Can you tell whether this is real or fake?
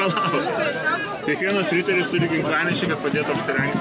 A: real